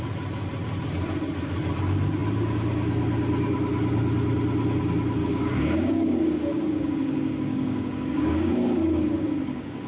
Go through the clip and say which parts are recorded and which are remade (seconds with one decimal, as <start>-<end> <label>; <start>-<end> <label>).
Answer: 0.0-5.2 recorded; 5.2-9.9 remade